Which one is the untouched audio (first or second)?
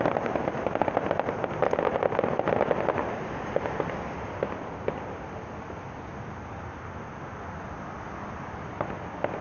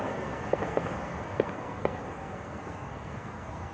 first